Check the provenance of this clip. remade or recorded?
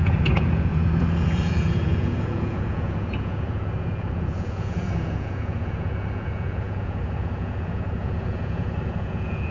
remade